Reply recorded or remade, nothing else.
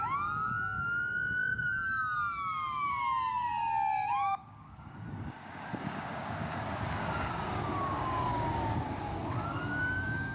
remade